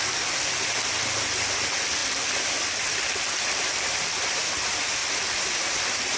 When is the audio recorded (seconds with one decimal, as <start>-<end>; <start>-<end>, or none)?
0.0-6.2